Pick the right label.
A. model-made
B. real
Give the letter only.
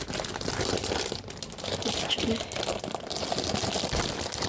B